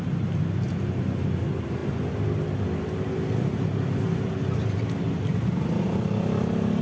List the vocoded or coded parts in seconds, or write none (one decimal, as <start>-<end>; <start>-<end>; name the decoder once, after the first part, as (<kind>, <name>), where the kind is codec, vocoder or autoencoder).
none